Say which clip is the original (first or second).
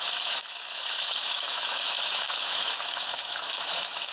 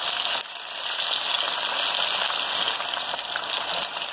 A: second